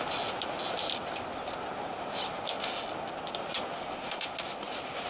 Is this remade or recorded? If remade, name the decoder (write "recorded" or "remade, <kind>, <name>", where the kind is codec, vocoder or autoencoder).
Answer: recorded